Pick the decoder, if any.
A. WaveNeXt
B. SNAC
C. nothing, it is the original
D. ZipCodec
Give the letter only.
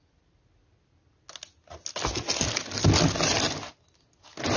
C